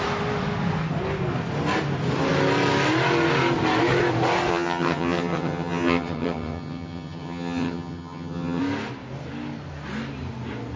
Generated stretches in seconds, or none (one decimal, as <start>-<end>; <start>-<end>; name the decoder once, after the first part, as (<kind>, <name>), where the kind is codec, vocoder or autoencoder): 4.5-8.6 (vocoder, HiFi-GAN)